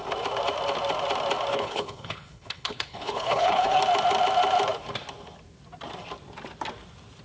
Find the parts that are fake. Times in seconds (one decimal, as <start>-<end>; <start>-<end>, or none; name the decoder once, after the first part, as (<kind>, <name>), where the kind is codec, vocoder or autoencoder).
1.5-3.8 (codec, HILCodec)